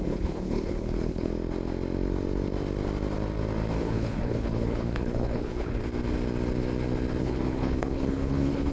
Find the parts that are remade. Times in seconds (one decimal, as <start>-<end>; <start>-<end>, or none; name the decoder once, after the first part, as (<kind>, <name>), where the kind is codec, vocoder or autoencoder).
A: 0.0-1.3 (codec, HILCodec); 3.8-5.8; 7.2-8.7